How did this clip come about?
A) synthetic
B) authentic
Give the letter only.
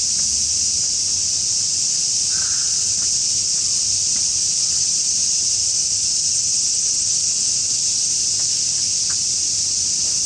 B